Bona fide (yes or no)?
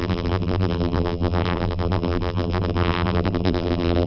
no